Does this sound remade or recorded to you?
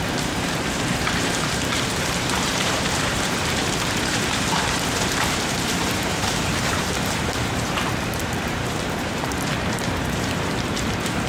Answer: remade